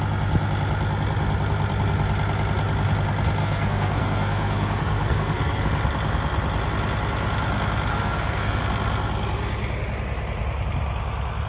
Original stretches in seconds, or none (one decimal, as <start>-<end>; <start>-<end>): 0.0-3.4; 5.6-7.9; 8.6-11.5